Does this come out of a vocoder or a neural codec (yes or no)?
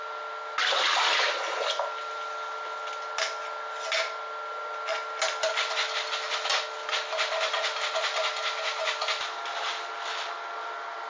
no